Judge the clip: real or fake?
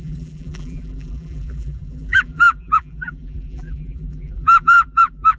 fake